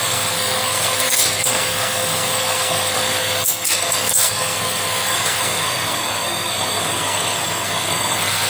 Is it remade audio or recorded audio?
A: remade